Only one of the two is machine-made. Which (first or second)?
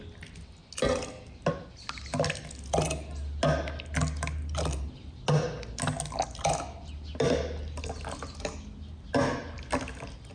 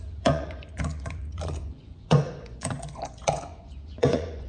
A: second